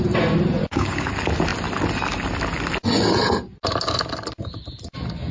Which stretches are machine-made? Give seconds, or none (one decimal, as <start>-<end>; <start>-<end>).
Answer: 0.6-1.1